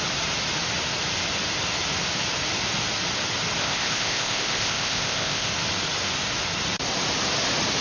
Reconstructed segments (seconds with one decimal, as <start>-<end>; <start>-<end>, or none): 3.6-5.5